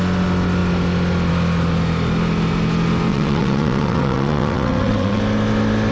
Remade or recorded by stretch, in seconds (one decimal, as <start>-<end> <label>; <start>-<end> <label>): 0.0-3.1 recorded; 3.1-5.2 remade; 5.2-5.9 recorded